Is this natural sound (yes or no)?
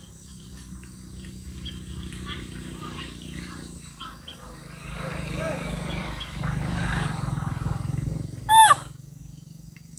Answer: no